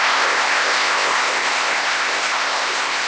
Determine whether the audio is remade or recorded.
remade